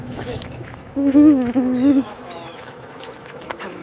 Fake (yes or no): yes